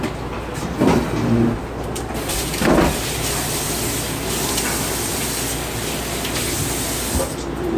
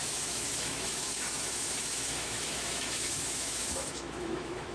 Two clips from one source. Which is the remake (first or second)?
second